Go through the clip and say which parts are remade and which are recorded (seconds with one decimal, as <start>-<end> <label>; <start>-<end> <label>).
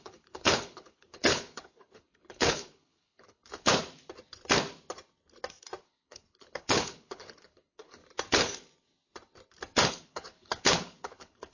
0.0-3.8 remade; 3.8-5.8 recorded; 5.8-8.0 remade; 8.0-9.9 recorded; 9.9-11.5 remade